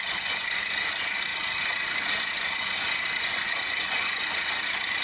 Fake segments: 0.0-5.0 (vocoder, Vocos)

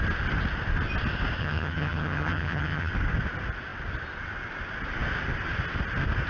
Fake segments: 1.4-2.9 (vocoder, HiFi-GAN)

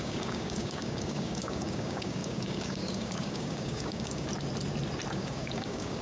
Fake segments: 0.0-4.3 (codec, DAC); 5.1-6.0